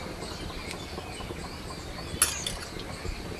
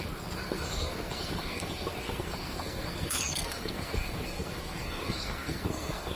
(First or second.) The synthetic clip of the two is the second